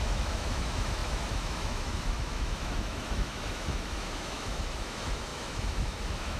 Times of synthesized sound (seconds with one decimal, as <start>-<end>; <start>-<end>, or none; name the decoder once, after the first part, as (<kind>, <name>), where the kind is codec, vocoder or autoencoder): 0.0-6.4 (autoencoder, DAC-VAE)